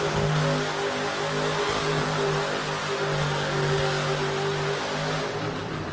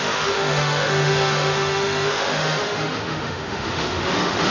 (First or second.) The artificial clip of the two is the second